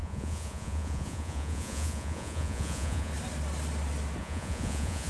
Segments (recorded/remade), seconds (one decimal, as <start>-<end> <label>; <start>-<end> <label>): 0.0-3.1 remade; 3.1-4.2 recorded; 4.2-5.1 remade